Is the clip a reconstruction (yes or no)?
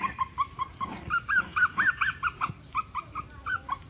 yes